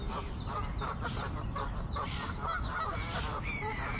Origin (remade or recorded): remade